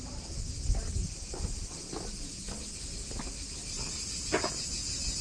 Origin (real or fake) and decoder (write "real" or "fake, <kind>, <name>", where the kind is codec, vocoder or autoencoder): real